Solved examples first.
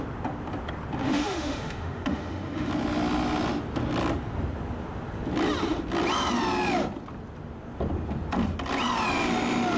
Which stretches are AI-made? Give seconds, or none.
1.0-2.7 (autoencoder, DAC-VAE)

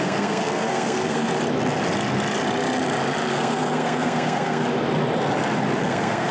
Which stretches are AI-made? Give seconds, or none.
0.0-1.3 (codec, SNAC); 3.3-4.6; 5.8-6.3

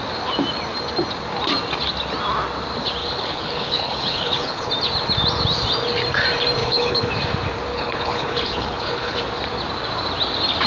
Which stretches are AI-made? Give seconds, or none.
3.0-4.7 (codec, HILCodec); 6.6-7.1; 7.7-9.2

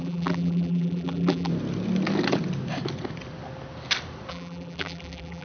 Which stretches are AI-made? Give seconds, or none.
0.0-1.5 (vocoder, BigVGAN v2); 4.3-5.4